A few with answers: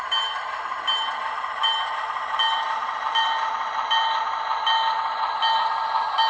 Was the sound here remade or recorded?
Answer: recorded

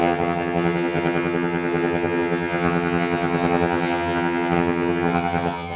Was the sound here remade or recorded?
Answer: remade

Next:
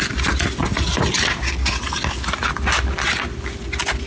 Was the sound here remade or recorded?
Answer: recorded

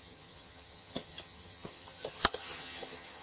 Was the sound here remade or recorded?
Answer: remade